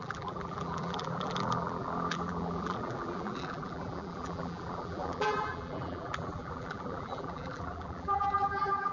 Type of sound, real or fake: fake